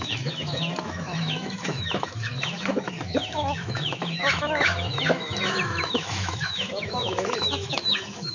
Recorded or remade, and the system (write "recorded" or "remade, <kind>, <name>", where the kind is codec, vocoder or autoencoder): remade, autoencoder, DAC-VAE